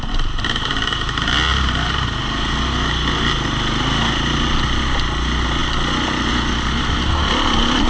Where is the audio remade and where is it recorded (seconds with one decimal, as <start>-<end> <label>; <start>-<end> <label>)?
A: 0.0-7.9 recorded